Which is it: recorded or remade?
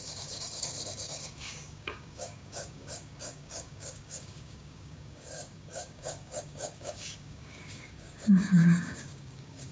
remade